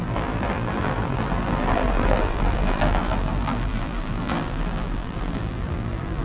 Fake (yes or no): yes